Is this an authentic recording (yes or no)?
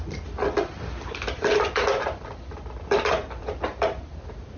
yes